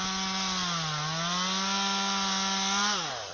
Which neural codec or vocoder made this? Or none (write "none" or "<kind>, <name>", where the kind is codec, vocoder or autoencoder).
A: none